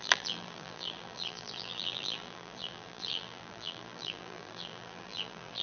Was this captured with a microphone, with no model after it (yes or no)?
no